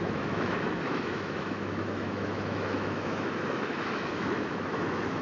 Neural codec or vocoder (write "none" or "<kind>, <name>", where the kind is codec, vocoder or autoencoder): autoencoder, DAC-VAE